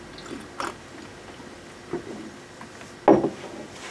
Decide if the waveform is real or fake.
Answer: real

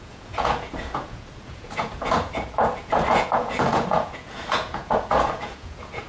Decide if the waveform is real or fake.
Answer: fake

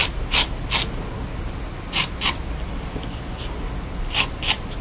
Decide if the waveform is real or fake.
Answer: real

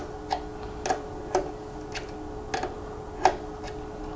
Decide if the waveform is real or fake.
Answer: real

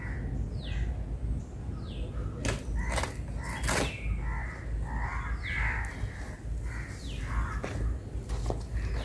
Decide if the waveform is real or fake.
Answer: real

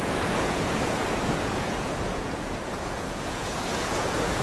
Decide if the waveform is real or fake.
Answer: fake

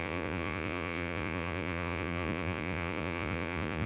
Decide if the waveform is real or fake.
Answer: fake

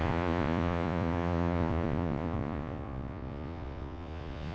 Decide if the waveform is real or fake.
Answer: fake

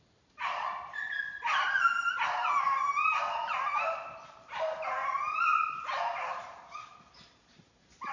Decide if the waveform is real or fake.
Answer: real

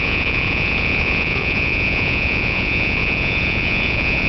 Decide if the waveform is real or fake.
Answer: fake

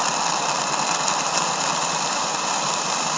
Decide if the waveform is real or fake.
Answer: real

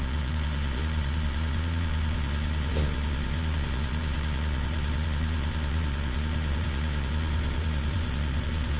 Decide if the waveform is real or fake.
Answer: fake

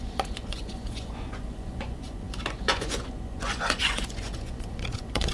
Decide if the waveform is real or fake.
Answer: fake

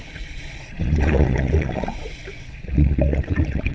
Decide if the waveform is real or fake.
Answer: fake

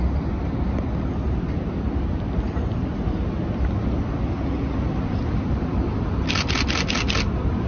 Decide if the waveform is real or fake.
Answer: real